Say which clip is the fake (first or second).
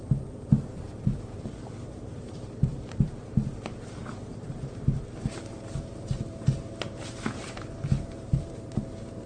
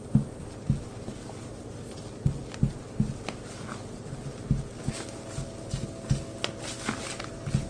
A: first